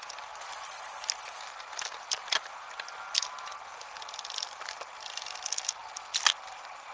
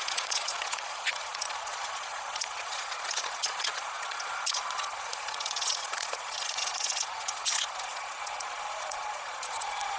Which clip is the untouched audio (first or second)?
first